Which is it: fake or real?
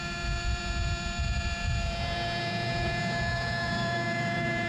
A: fake